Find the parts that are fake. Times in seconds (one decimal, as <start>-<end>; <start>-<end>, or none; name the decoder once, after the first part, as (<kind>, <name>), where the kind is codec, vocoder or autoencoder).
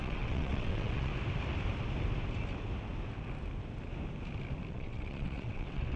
0.0-1.1 (vocoder, WaveNeXt); 4.7-6.0